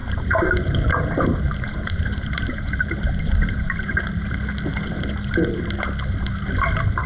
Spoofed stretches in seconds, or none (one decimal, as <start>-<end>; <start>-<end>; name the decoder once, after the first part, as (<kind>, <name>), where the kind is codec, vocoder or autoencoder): 0.0-4.0 (vocoder, BigVGAN v2); 4.7-5.6